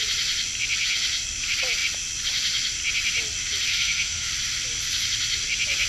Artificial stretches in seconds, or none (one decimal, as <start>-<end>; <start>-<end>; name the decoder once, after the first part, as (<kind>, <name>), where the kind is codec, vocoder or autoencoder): 3.7-4.3 (autoencoder, DAC-VAE)